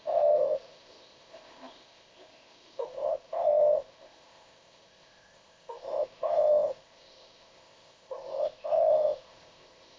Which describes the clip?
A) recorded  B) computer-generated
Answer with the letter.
B